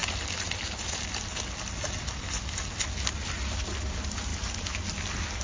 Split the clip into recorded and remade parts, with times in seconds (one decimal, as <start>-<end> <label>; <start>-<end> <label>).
0.0-5.4 recorded